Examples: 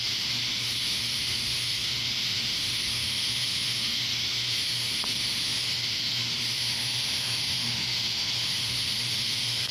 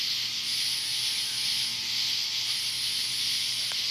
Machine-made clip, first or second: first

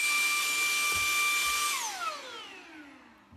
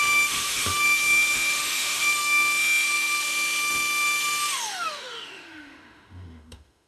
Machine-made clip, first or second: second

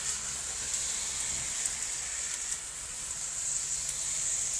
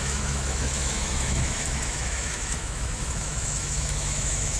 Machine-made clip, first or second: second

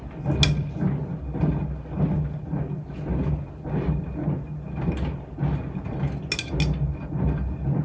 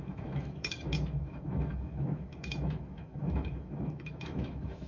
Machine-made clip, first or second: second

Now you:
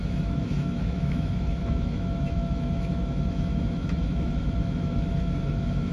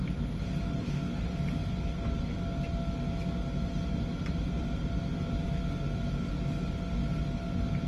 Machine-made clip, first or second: first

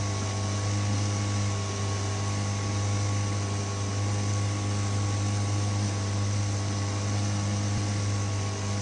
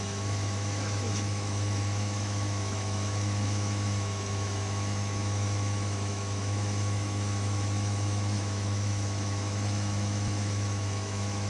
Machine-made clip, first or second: second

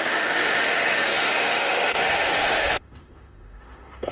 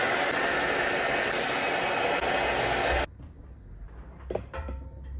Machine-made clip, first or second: first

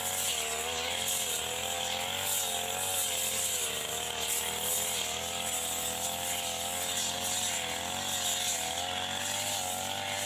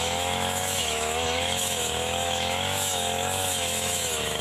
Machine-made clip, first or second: second